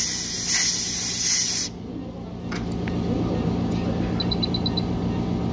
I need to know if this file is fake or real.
real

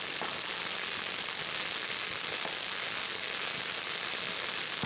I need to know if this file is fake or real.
real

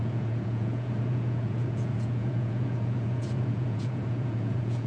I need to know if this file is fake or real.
fake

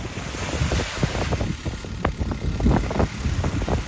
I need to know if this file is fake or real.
real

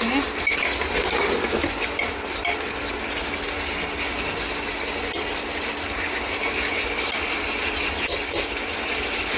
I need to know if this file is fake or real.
real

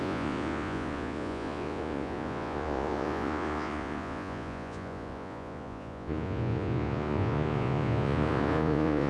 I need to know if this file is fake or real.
fake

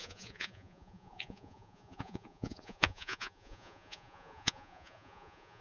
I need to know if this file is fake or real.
fake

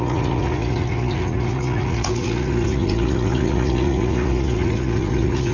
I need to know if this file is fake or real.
fake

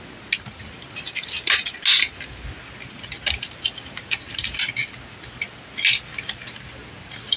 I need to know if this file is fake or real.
real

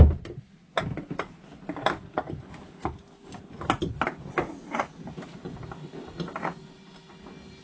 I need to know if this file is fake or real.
real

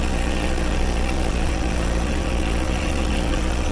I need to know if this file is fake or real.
fake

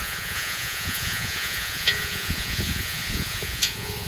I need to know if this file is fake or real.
fake